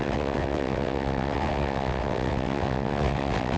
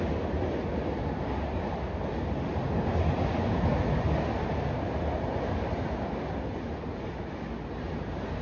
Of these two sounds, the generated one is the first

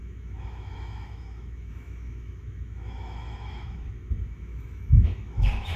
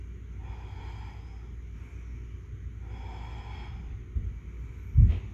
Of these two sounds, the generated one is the first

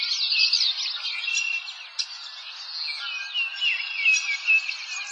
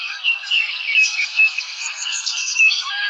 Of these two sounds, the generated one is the second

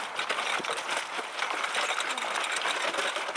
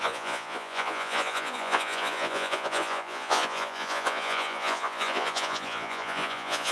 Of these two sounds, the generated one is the second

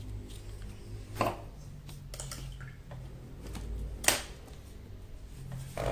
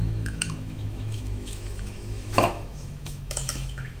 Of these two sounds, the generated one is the second